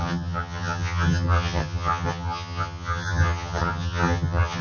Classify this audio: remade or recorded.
remade